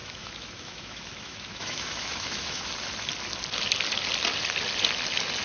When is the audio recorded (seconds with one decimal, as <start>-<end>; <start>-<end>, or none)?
2.7-5.4